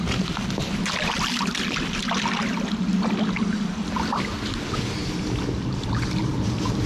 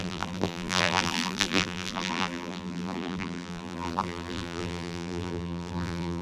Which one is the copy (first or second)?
second